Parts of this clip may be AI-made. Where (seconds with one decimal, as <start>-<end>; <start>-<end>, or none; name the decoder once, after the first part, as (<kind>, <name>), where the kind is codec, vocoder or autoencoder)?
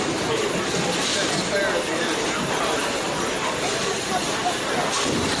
1.1-4.1 (vocoder, BigVGAN v2)